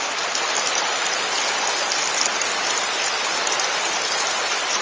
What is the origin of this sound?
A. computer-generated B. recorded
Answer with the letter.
B